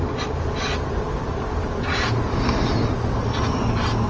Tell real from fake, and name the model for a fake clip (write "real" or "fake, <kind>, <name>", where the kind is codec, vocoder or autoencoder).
real